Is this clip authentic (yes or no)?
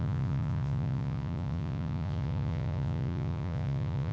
no